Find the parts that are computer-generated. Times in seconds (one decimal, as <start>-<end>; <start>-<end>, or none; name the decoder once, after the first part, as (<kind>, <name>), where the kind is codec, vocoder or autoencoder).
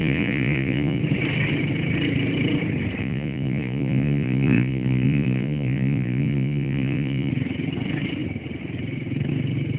0.0-1.0 (vocoder, Vocos); 3.0-7.3